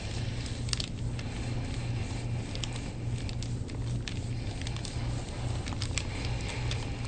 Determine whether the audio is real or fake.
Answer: real